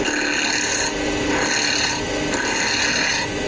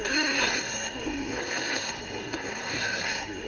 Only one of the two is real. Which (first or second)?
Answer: first